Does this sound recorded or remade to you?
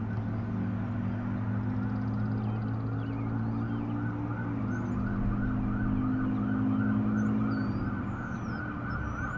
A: recorded